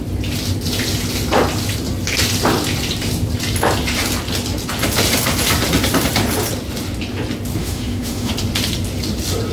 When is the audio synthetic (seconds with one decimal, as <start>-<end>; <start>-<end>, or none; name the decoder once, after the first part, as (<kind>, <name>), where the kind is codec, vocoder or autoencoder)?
7.6-8.3 (autoencoder, DAC-VAE)